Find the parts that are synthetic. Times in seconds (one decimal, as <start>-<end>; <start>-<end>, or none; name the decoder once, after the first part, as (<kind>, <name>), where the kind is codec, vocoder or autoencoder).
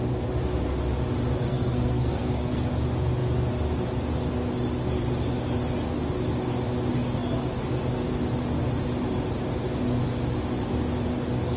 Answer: 1.4-2.7 (codec, SNAC)